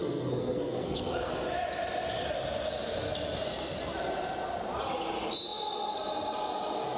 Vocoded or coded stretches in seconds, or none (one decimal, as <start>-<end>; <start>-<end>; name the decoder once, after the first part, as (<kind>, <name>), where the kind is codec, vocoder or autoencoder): 0.0-1.3 (codec, SNAC)

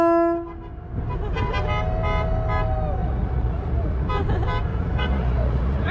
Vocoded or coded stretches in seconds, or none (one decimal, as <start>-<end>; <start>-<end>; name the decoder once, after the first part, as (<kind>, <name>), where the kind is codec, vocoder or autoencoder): 3.0-4.1 (vocoder, Vocos); 4.7-5.9

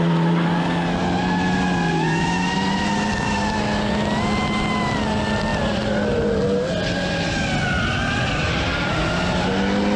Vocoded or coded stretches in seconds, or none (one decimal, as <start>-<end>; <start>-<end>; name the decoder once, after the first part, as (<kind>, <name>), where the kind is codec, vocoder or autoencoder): none